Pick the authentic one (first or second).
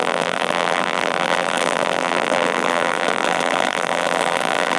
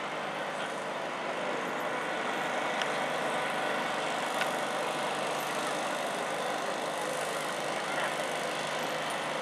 second